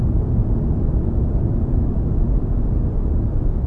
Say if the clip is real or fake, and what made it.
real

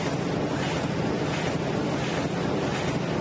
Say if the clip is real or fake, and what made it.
real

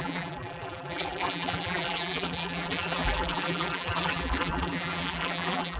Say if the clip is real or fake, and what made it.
fake, vocoder, BigVGAN v2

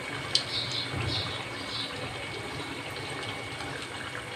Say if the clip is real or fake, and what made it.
fake, vocoder, BigVGAN v2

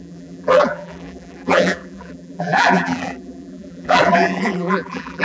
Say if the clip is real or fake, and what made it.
fake, vocoder, BigVGAN v2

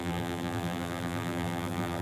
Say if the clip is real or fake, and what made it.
fake, vocoder, BigVGAN v2